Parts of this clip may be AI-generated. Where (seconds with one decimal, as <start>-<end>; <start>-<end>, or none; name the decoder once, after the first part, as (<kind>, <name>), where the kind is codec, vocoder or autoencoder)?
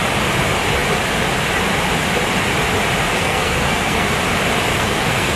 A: 3.1-4.1 (codec, SNAC); 4.7-5.4